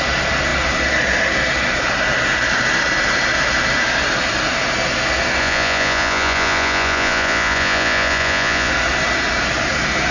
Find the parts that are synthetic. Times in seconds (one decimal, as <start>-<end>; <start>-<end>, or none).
5.4-8.7